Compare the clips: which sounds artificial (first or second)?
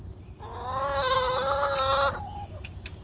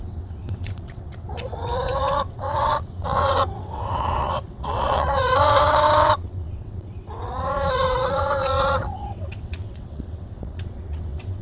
second